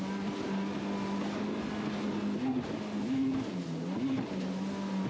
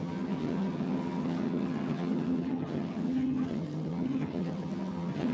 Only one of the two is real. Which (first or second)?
first